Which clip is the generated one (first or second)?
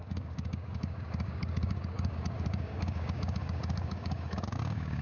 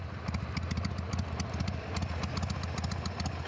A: first